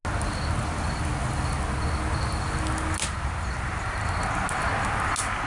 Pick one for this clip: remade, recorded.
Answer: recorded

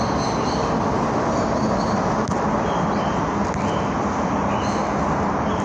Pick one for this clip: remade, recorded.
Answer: recorded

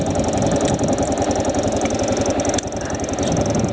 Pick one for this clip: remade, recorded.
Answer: recorded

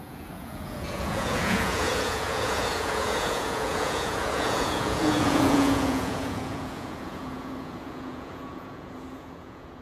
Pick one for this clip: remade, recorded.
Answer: remade